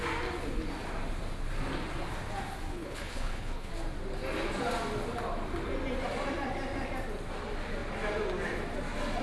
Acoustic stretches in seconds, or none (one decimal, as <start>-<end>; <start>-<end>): 0.0-2.7; 3.7-9.2